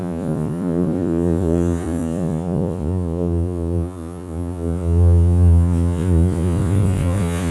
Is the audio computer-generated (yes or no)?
yes